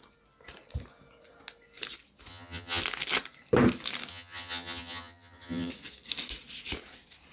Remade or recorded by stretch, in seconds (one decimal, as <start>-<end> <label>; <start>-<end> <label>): 0.0-2.3 recorded; 2.3-2.8 remade; 2.8-4.1 recorded; 4.1-5.7 remade; 5.7-7.3 recorded